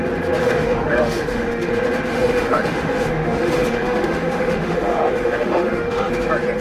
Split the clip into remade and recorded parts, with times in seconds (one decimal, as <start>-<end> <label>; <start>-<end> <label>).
0.0-0.4 recorded; 0.4-1.7 remade; 1.7-2.1 recorded; 2.1-6.1 remade; 6.1-6.6 recorded